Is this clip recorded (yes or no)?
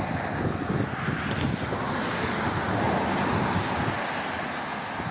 yes